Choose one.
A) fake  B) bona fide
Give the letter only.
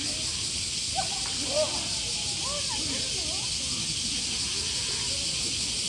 B